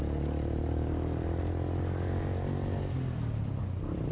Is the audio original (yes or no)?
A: yes